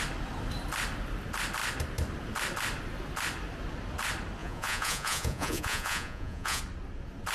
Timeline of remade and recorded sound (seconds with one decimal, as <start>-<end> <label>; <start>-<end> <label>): 0.0-4.4 recorded; 4.4-6.6 remade; 6.6-7.3 recorded